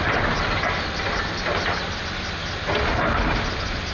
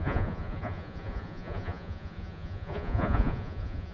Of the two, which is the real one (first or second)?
first